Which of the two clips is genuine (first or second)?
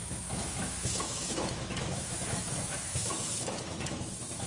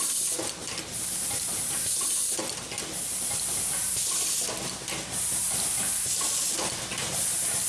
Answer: second